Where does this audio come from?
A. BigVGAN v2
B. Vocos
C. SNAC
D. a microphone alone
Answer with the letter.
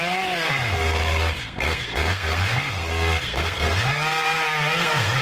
C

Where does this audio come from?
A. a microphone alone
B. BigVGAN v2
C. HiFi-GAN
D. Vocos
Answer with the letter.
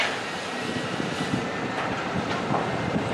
A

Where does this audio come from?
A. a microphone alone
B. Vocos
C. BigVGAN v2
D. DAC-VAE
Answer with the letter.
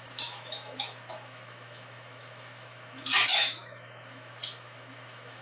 D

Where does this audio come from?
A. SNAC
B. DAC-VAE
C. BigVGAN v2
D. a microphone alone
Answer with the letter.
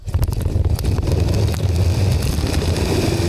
D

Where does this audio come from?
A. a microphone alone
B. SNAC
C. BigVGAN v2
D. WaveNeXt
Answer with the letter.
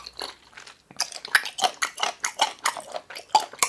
A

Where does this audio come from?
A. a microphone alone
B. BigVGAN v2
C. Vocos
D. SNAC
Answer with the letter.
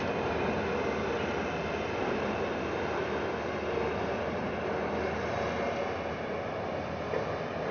A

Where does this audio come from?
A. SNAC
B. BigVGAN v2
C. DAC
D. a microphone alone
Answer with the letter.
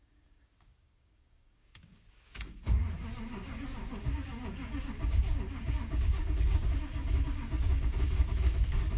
C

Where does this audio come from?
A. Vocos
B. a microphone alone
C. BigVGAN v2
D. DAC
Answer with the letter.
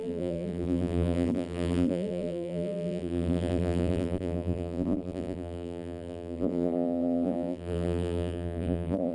C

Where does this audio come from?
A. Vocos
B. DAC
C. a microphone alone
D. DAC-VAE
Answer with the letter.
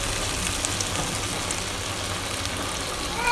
C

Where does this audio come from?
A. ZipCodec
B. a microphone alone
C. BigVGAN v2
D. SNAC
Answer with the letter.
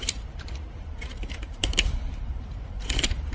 C